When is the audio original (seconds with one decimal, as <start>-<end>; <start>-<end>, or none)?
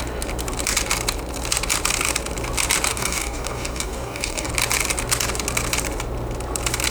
0.0-2.9; 4.5-6.9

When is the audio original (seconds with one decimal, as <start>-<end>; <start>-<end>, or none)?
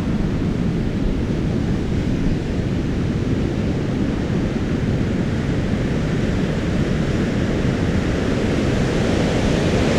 0.0-1.6; 2.8-10.0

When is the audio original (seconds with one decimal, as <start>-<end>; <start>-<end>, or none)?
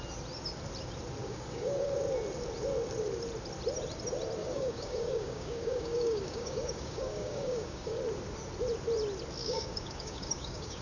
0.0-1.2; 1.9-4.4; 8.0-9.4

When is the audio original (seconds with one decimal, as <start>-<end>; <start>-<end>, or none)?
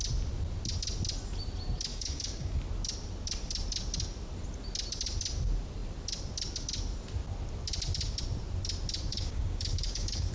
0.0-1.9; 2.6-9.1